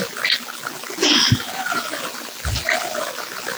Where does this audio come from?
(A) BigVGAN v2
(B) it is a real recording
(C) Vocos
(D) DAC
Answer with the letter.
B